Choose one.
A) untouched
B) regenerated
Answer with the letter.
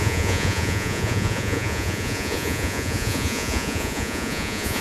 B